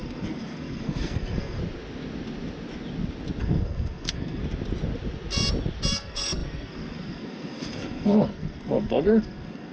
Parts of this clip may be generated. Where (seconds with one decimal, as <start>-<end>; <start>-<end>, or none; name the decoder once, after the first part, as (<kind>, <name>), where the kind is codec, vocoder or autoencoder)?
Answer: 0.0-1.6 (codec, SNAC); 3.4-4.4; 5.9-9.7